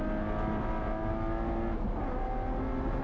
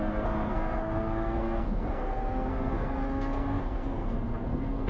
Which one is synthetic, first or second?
second